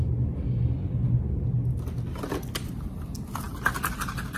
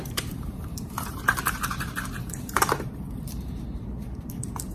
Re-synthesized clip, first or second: second